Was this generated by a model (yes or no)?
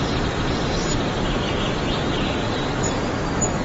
no